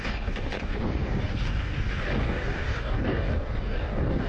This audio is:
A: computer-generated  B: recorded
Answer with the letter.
A